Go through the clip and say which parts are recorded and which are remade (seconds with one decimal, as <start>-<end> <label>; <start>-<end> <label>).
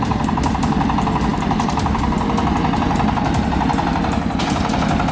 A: 0.0-5.1 recorded